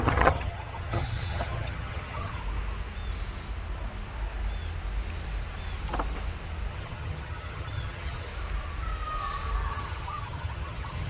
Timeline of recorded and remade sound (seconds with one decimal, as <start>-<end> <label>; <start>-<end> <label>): 0.0-2.4 remade; 2.4-6.7 recorded; 6.7-8.3 remade; 8.3-9.7 recorded; 9.7-11.1 remade